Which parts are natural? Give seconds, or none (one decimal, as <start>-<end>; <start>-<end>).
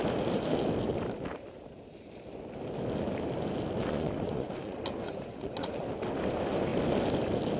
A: 0.0-3.8; 5.8-7.6